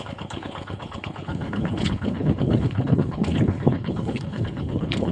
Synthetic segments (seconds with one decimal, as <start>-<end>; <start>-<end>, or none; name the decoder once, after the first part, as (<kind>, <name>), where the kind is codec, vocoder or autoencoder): 0.0-5.1 (codec, HILCodec)